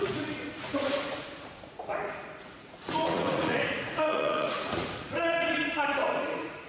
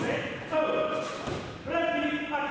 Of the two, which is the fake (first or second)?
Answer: first